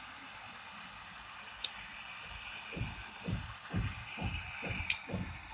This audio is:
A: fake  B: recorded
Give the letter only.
B